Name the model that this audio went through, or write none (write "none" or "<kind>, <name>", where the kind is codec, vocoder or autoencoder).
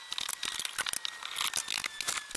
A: none